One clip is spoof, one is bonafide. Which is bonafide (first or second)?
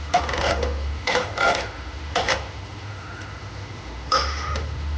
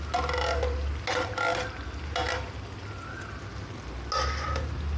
second